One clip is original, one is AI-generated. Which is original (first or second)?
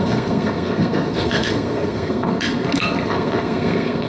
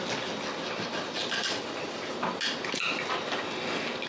second